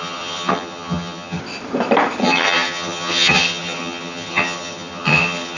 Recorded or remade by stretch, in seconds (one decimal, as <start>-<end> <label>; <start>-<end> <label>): 0.0-1.4 remade; 1.4-2.2 recorded; 2.2-5.6 remade